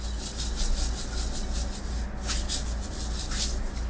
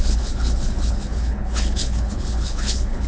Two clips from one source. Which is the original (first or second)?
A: first